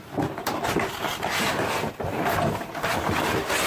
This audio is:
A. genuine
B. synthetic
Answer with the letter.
A